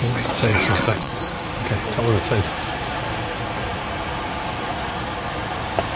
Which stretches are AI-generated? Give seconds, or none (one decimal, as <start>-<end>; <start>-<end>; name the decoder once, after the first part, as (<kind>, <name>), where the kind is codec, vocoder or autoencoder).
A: 0.5-1.2 (vocoder, WaveNeXt)